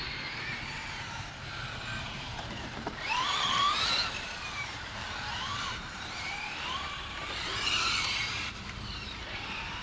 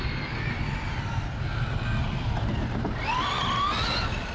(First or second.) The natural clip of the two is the second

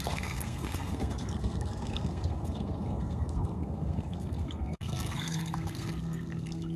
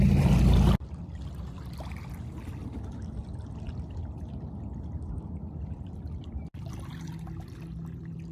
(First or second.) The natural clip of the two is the second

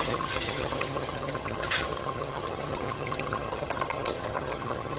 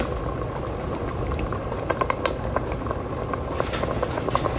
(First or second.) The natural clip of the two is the second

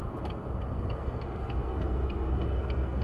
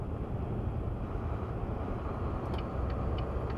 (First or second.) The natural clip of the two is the second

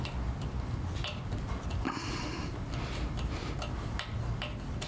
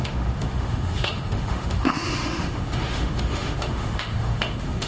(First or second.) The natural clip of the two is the first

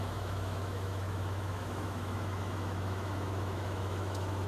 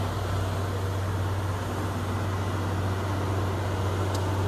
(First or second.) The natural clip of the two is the second